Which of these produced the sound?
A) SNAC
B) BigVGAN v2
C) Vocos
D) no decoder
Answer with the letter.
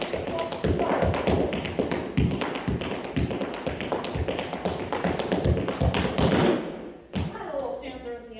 D